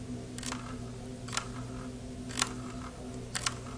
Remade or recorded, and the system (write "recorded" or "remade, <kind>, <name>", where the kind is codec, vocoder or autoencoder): recorded